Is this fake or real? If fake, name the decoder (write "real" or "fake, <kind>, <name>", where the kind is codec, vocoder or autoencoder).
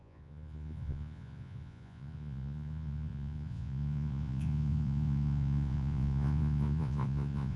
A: fake, vocoder, Vocos